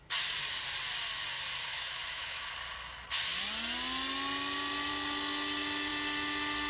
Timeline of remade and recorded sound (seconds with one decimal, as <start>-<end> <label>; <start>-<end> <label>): 0.0-1.7 recorded; 1.7-2.4 remade; 2.4-6.7 recorded